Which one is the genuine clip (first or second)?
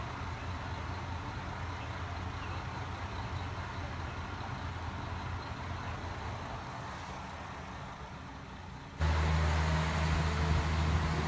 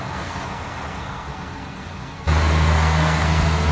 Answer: first